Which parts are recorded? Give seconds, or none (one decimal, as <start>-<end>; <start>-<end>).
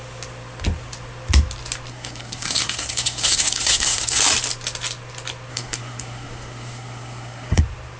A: 0.0-1.9; 4.2-5.5; 7.6-8.0